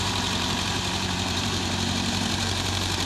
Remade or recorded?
remade